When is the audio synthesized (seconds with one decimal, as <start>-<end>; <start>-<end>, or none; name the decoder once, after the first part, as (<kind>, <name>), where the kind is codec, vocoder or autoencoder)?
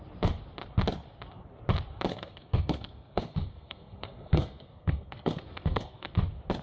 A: 2.1-6.1 (codec, SNAC)